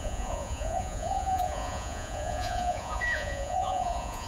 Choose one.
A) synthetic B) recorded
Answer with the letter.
A